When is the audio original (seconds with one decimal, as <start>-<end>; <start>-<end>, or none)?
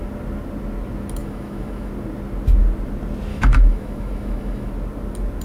0.0-1.2; 1.9-3.3; 4.7-5.4